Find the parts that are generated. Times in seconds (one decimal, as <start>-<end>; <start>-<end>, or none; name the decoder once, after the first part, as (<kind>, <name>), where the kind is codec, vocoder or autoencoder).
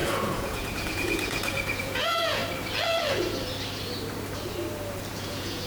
0.0-2.4 (vocoder, Vocos); 5.1-5.7